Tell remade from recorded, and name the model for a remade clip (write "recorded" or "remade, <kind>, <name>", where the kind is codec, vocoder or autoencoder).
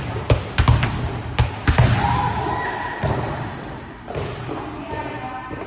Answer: recorded